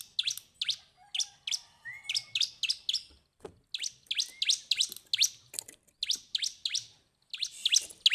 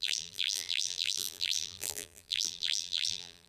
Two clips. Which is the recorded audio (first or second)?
first